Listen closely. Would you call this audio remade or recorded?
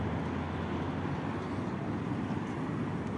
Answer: recorded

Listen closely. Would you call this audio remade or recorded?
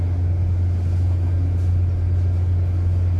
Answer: recorded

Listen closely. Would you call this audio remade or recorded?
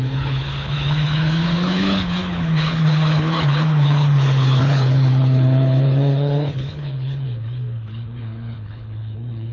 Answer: remade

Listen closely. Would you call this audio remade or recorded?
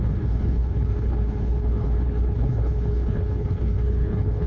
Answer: remade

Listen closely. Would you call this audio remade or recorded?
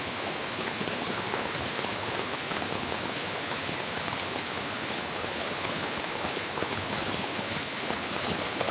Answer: remade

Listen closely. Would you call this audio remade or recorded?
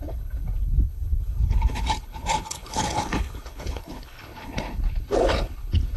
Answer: remade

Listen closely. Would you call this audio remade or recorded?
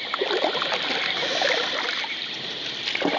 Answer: recorded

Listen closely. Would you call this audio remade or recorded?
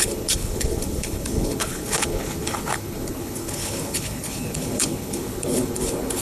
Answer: remade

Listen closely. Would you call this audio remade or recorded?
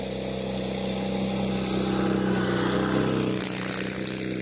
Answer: recorded